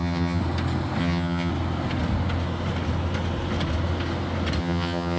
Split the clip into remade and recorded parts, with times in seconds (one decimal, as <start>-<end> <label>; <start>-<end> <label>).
0.0-0.4 remade; 0.4-1.0 recorded; 1.0-1.5 remade; 1.5-4.6 recorded; 4.6-5.2 remade